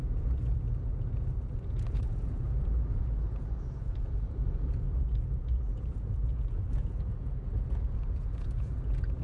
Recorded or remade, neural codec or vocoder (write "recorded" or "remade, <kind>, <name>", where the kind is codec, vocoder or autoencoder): remade, vocoder, Vocos